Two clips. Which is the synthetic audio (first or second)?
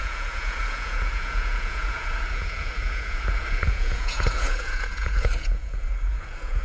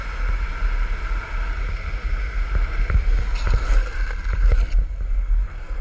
first